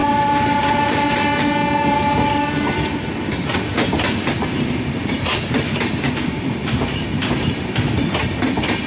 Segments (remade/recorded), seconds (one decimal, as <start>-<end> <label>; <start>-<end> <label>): 0.0-1.1 remade; 1.1-1.8 recorded; 1.8-2.9 remade; 2.9-3.7 recorded; 3.7-8.2 remade; 8.2-8.9 recorded